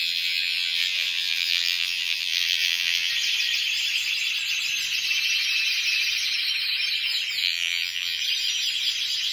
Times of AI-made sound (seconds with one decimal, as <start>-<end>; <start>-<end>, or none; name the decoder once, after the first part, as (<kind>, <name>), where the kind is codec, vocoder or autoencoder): 0.0-3.1 (vocoder, BigVGAN v2); 7.4-8.2